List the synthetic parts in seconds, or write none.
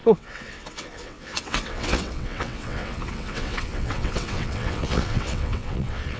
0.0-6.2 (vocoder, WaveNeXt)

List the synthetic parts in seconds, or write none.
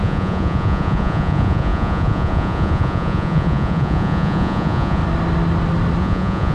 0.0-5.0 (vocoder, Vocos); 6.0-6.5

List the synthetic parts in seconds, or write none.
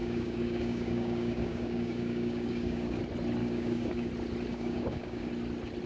0.0-3.0 (codec, DAC); 3.4-4.1; 4.5-5.3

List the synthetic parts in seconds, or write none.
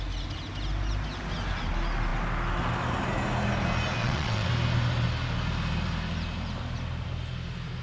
4.0-4.5 (vocoder, WaveNeXt)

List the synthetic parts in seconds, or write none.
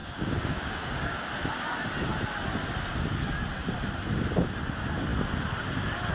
0.0-1.3 (codec, DAC)